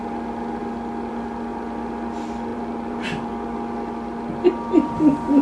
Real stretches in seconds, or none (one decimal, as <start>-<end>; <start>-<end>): 0.0-2.5; 3.3-4.5